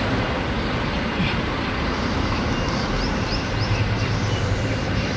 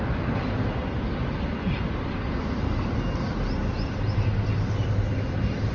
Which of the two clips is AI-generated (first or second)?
first